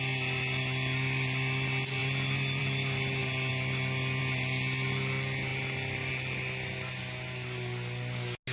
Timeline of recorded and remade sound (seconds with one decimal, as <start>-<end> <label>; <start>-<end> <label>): 0.0-8.5 recorded